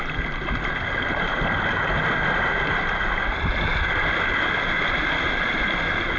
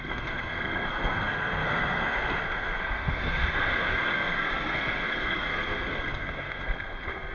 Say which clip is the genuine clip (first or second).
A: first